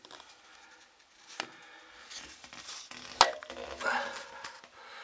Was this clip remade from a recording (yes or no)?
no